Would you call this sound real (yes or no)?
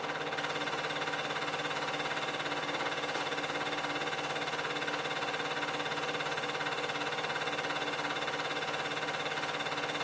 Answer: yes